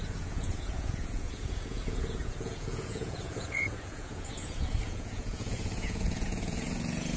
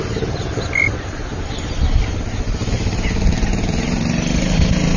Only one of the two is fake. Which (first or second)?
first